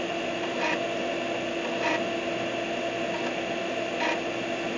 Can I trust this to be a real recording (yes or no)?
yes